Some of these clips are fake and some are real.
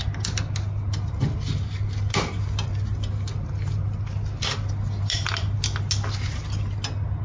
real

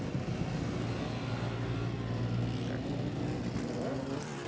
real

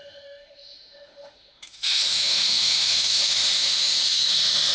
fake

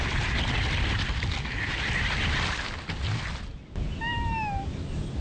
real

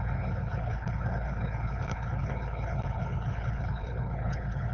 fake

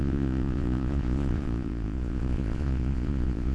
fake